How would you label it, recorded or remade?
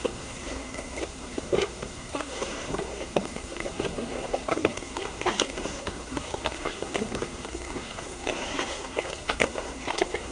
remade